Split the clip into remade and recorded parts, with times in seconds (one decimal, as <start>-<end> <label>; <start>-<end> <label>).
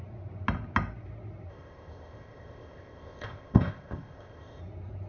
0.0-1.5 recorded; 1.5-4.6 remade; 4.6-5.1 recorded